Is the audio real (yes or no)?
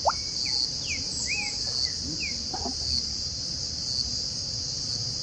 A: yes